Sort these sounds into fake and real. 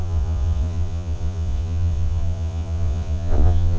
fake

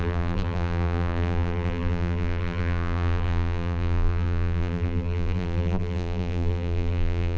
fake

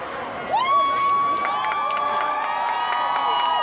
real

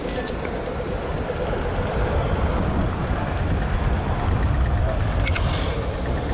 real